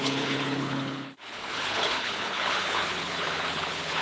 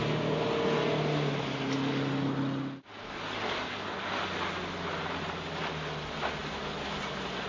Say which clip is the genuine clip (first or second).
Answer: second